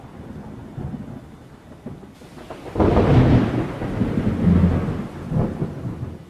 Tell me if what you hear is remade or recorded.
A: recorded